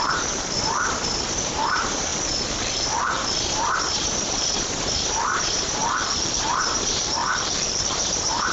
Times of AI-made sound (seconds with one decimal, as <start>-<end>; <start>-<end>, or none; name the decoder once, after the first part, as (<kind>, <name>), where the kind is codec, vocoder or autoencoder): 0.0-2.1 (vocoder, BigVGAN v2); 3.4-5.8; 6.4-7.2; 7.8-8.5